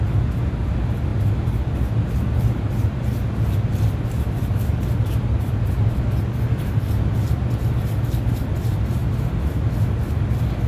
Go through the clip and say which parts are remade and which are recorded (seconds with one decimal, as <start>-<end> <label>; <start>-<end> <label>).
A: 0.0-10.7 recorded